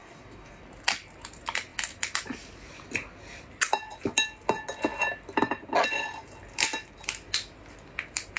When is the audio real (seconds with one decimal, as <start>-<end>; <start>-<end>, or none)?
0.6-8.4